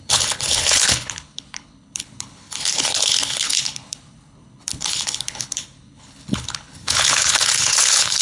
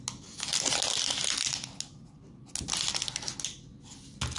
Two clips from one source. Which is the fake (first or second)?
first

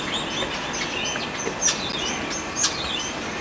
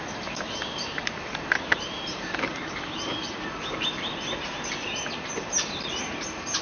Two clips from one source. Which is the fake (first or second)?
second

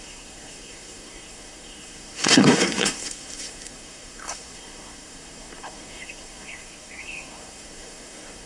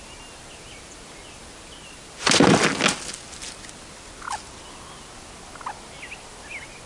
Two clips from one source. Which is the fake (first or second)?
first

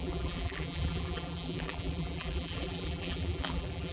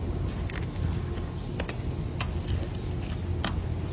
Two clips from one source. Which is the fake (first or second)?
first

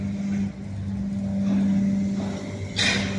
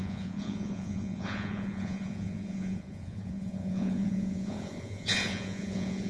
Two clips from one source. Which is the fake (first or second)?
second